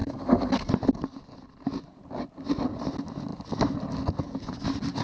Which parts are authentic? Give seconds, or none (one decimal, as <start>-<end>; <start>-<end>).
0.7-5.0